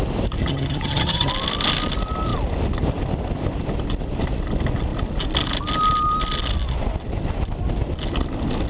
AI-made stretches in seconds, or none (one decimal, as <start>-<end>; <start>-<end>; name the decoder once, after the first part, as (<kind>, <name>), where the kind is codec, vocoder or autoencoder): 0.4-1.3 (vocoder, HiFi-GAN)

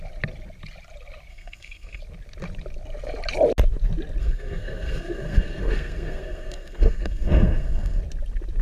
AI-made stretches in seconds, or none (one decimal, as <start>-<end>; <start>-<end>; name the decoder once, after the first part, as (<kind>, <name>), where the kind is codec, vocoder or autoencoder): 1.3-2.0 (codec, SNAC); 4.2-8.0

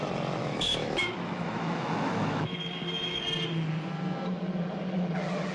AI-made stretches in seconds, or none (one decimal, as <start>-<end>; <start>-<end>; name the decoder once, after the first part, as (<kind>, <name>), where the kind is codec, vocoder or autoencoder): 0.4-3.2 (autoencoder, DAC-VAE)

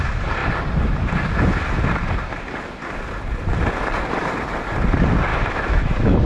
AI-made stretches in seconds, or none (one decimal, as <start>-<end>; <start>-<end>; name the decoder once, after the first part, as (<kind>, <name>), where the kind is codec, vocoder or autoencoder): 5.3-6.2 (autoencoder, DAC-VAE)

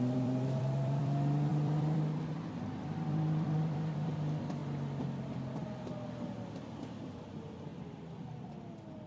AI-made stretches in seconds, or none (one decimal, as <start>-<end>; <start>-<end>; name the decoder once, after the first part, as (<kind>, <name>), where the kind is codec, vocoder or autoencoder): 0.0-4.6 (vocoder, BigVGAN v2); 6.3-7.7

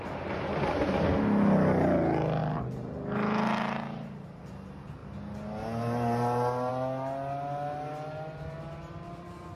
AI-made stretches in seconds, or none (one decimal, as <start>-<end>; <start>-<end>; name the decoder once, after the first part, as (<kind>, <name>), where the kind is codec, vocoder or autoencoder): none

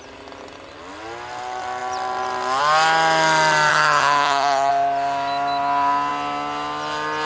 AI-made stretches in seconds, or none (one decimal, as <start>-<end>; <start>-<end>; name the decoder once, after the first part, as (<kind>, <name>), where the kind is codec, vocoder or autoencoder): 3.7-4.7 (vocoder, HiFi-GAN)

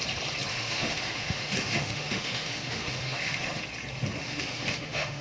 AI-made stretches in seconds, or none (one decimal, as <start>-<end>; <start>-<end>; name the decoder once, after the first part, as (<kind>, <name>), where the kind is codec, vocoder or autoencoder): 0.5-3.6 (autoencoder, DAC-VAE); 4.2-5.2